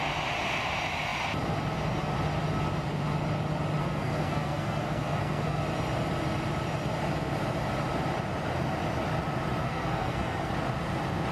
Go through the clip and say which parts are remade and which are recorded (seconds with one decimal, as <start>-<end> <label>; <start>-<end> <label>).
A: 0.0-3.8 recorded; 3.8-5.6 remade; 5.6-9.6 recorded; 9.6-10.5 remade; 10.5-11.3 recorded

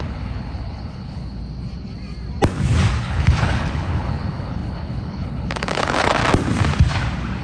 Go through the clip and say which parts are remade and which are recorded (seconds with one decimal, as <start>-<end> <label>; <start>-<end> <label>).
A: 0.0-1.4 remade; 1.4-3.0 recorded; 3.0-6.2 remade; 6.2-7.4 recorded